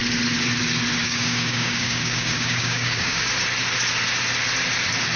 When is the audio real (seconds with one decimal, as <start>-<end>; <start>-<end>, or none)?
0.0-1.0; 3.3-5.2